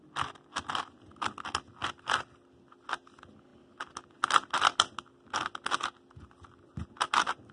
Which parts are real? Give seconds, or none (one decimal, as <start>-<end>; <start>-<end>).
0.0-7.5